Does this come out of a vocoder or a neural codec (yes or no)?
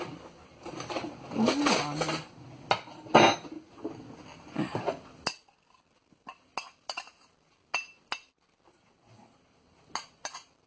no